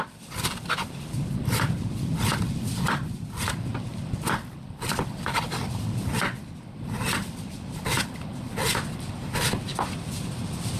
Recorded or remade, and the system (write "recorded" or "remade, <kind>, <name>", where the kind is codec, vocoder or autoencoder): remade, vocoder, BigVGAN v2